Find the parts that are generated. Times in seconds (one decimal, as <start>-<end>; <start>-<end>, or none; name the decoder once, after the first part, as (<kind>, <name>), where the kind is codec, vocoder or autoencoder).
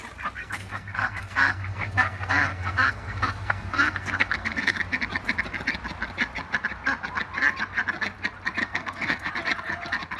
0.4-4.8 (codec, SNAC); 8.6-9.3